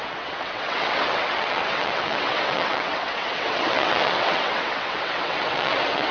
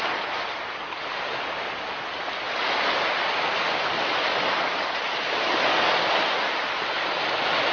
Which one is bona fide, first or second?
second